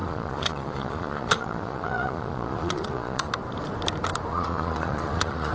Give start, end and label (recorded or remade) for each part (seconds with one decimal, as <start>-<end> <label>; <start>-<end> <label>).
0.0-3.3 remade; 3.3-4.3 recorded; 4.3-5.5 remade